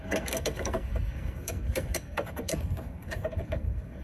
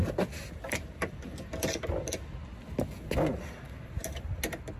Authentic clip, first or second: second